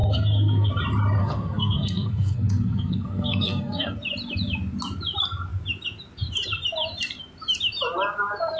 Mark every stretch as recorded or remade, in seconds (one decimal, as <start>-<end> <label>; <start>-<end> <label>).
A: 0.0-0.7 remade; 0.7-1.2 recorded; 1.2-4.0 remade; 4.0-8.6 recorded